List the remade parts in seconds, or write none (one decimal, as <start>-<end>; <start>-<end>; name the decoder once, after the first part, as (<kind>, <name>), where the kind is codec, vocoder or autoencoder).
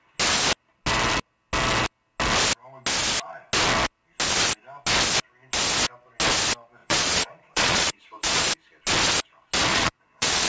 6.8-8.4 (vocoder, Vocos); 9.7-10.5